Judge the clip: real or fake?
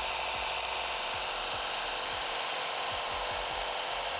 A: real